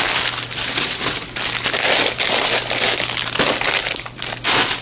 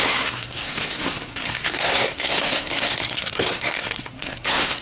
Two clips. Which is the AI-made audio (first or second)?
second